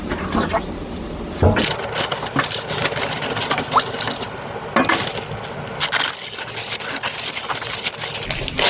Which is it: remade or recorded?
recorded